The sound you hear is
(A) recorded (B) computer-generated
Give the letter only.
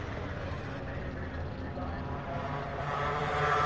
B